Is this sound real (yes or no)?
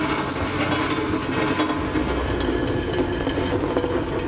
yes